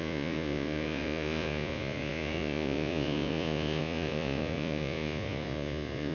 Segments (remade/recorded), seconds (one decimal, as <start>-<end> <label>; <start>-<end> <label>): 0.0-6.1 remade

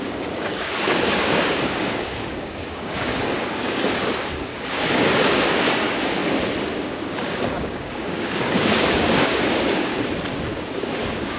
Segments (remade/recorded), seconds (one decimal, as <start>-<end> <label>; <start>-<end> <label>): 0.0-6.2 remade; 6.2-6.8 recorded; 6.8-9.9 remade; 9.9-10.7 recorded; 10.7-11.4 remade

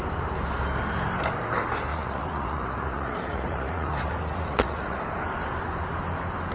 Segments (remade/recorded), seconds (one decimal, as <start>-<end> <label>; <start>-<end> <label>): 0.0-1.9 recorded; 1.9-5.0 remade; 5.0-6.5 recorded